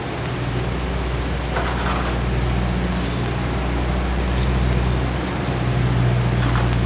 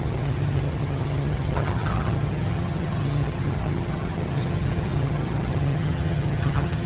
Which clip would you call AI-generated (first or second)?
second